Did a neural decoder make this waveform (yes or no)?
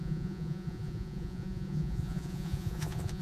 yes